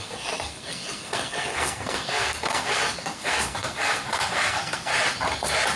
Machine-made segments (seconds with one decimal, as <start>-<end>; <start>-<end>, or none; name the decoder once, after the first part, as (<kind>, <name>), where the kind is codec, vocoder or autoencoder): 0.0-4.9 (codec, SNAC)

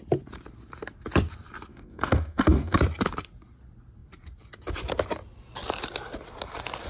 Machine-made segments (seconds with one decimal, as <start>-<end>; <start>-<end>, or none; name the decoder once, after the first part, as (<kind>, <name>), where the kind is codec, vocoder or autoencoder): 1.7-2.8 (codec, SNAC)

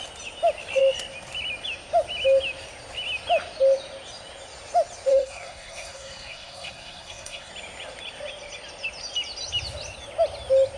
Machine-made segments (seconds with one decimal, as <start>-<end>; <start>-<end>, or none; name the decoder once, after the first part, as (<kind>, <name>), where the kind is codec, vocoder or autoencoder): 5.1-7.5 (codec, SNAC)

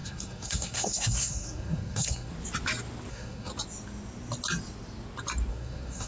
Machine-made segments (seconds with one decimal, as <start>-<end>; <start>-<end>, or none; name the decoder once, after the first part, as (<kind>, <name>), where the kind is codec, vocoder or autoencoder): 0.0-2.3 (codec, SNAC); 3.1-3.5; 5.5-6.1

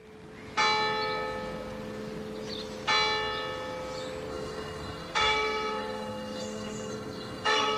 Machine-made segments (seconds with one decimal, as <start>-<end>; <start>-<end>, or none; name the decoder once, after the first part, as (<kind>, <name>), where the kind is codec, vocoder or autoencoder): 4.3-7.8 (codec, SNAC)

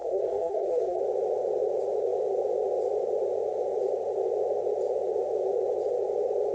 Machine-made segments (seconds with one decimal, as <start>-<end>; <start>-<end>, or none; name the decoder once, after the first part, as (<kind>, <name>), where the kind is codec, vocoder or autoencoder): 0.0-1.0 (codec, SNAC)